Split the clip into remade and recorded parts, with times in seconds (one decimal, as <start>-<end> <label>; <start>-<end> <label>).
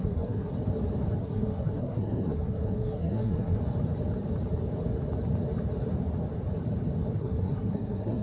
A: 0.0-0.5 remade; 0.5-1.2 recorded; 1.2-3.6 remade; 3.6-7.2 recorded; 7.2-8.2 remade